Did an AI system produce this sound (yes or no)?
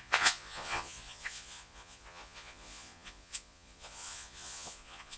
yes